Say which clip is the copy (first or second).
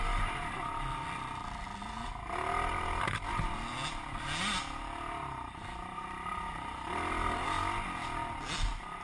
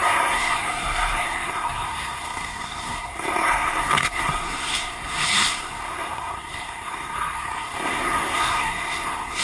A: second